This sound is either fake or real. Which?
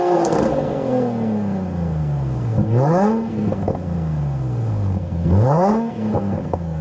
fake